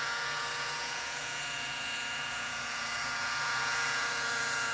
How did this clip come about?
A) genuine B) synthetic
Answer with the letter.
B